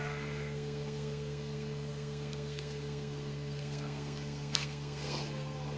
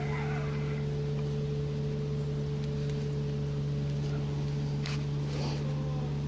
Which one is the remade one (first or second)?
first